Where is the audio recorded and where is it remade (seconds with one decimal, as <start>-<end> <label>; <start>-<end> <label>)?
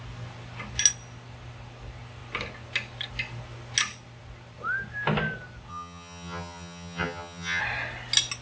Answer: 0.0-5.7 recorded; 5.7-7.6 remade; 7.6-8.4 recorded